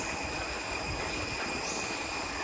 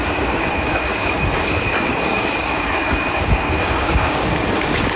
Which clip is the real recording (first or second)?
first